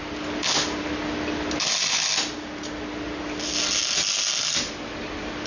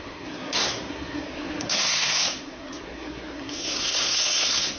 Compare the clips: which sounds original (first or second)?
first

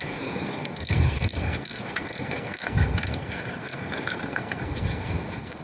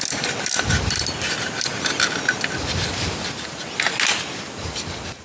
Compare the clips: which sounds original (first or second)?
second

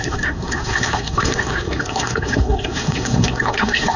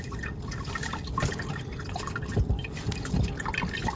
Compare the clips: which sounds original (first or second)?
second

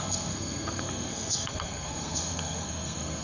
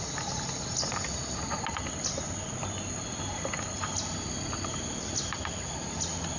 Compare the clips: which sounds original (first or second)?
second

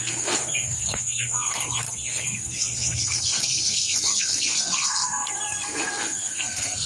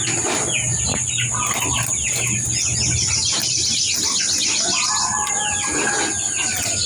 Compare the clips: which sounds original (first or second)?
second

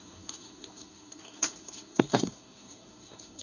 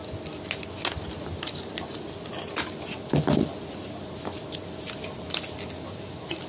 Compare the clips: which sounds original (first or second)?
second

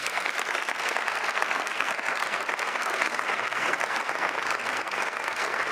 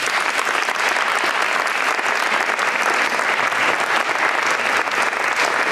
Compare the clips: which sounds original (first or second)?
second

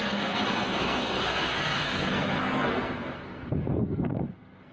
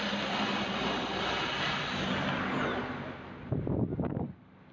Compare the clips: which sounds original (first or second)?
second